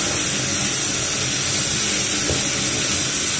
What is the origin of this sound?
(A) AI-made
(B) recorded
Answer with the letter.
B